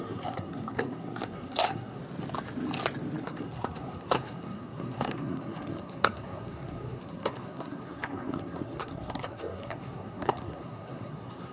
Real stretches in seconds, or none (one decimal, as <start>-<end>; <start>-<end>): 2.0-3.2